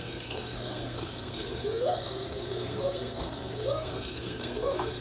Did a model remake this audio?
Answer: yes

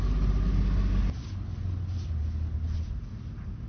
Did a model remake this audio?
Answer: no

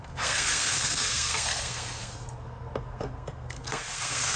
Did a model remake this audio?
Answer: yes